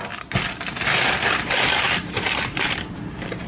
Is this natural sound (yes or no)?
yes